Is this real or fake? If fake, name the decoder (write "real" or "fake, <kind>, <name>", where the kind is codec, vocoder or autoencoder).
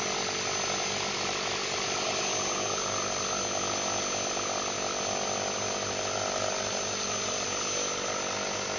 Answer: real